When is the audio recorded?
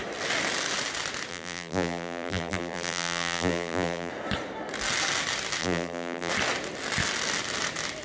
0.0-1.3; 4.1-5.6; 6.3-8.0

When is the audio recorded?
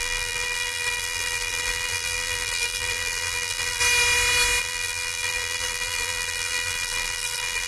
3.8-4.6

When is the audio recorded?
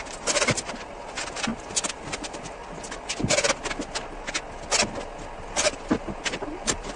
1.5-2.1; 2.6-5.4